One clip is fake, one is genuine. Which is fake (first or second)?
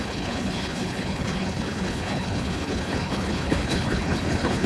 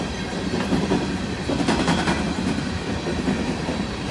first